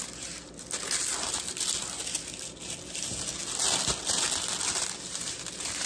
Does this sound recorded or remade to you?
recorded